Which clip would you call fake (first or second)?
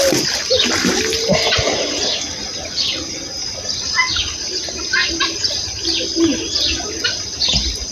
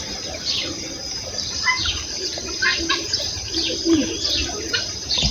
second